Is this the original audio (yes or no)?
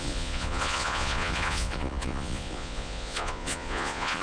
no